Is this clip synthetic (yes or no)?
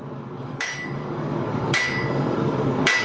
yes